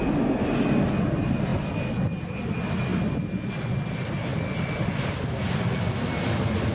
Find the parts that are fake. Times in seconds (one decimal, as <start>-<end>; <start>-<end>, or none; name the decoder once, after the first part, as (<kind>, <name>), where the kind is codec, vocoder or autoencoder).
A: none